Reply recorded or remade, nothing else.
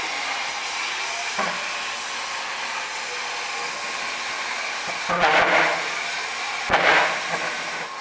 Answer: recorded